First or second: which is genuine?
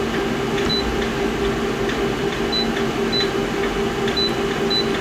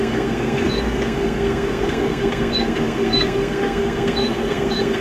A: first